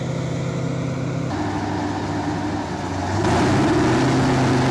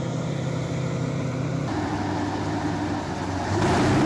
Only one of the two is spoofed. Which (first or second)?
second